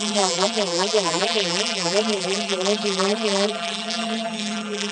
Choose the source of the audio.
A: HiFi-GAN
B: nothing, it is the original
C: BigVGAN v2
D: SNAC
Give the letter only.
C